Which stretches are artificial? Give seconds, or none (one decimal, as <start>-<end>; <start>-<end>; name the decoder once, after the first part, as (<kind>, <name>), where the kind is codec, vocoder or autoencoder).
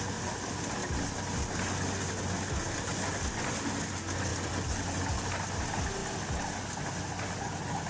4.3-5.0 (vocoder, BigVGAN v2)